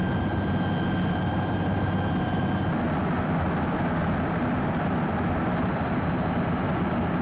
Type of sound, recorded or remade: recorded